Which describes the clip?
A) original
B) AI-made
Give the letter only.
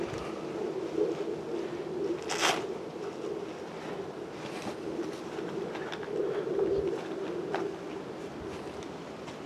A